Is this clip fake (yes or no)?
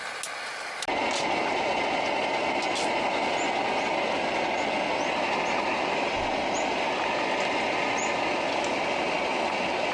no